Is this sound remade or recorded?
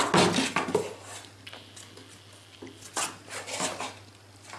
recorded